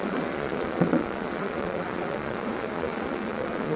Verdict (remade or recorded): remade